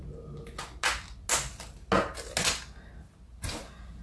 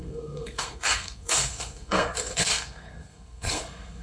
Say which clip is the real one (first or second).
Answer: first